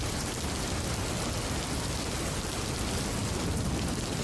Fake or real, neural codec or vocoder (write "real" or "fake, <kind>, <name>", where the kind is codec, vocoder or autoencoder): real